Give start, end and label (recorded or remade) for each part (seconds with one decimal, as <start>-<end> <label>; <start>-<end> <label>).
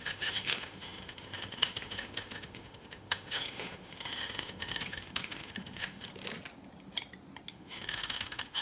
0.0-6.1 remade; 6.1-7.5 recorded; 7.5-8.6 remade